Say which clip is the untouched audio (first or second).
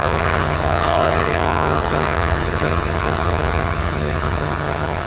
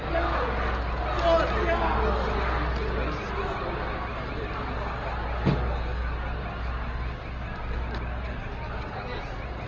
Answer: second